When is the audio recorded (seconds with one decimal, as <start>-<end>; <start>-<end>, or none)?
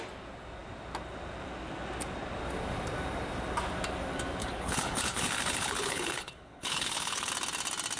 0.0-4.4; 7.3-8.0